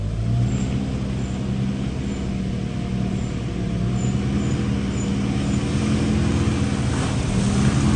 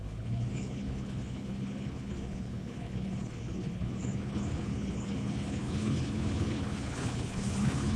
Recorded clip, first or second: first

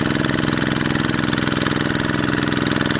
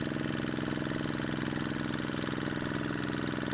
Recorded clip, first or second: second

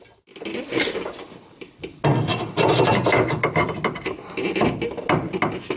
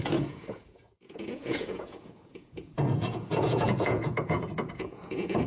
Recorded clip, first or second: first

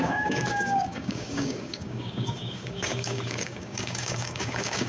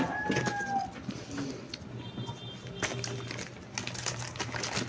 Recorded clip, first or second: second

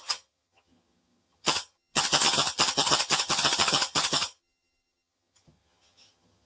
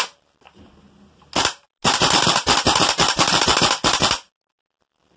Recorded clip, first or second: second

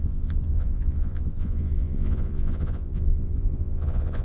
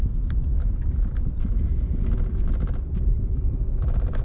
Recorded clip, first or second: second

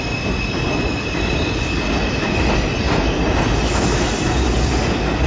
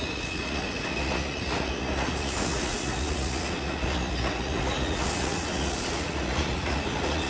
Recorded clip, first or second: first